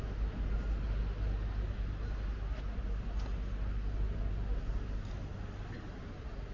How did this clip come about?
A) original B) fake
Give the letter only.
A